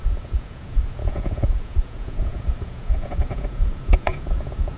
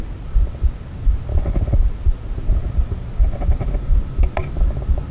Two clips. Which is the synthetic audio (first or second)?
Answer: first